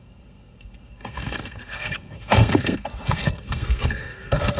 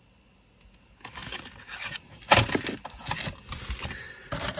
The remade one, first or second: first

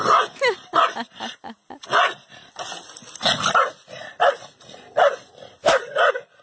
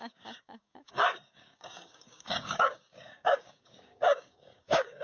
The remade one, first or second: second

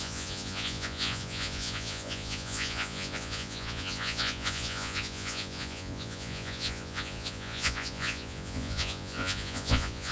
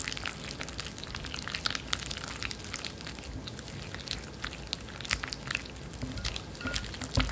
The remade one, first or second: first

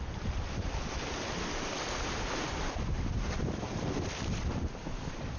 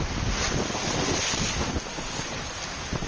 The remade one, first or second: first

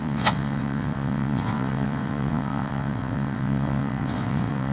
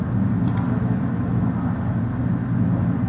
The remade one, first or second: first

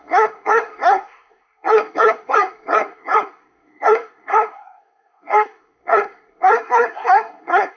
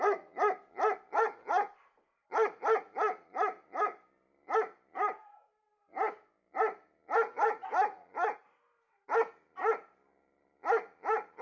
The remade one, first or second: first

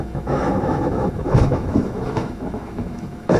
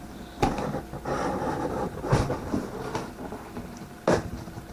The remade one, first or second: first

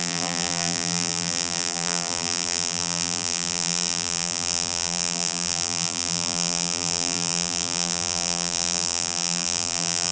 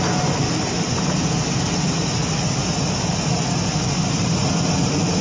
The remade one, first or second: first